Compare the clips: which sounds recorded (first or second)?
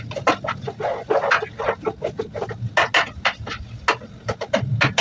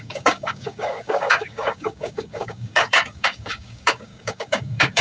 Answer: first